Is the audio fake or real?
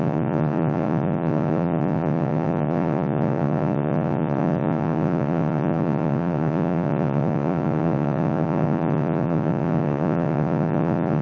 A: fake